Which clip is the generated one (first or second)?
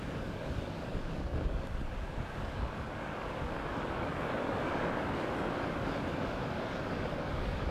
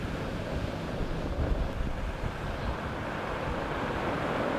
first